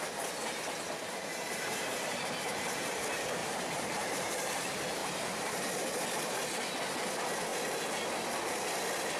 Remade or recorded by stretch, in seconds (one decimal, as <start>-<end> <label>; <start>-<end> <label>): 0.0-1.3 recorded; 1.3-3.0 remade; 3.0-3.4 recorded; 3.4-4.3 remade; 4.3-5.0 recorded; 5.0-5.5 remade; 5.5-9.2 recorded